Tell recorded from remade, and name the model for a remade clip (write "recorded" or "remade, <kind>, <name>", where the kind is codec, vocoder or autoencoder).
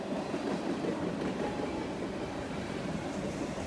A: recorded